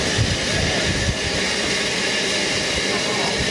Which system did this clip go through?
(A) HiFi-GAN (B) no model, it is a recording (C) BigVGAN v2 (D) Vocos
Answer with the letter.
B